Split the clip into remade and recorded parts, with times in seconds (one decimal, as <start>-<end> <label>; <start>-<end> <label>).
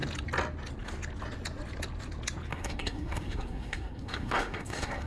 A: 0.0-2.5 recorded; 2.5-5.1 remade